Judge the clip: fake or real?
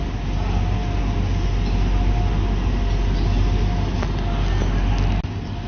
real